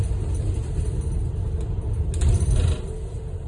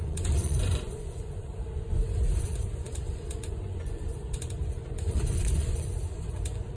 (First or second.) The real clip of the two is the first